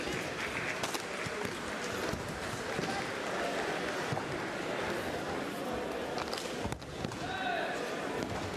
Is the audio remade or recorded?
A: recorded